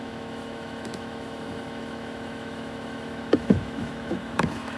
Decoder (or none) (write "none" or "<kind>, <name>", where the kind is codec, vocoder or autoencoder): autoencoder, DAC-VAE